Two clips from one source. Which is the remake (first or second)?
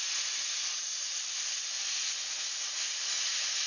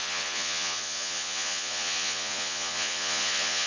second